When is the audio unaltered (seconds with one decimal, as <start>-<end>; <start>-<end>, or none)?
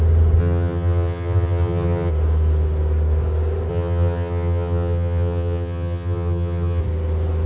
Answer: 0.0-0.4; 2.1-3.7; 6.8-7.5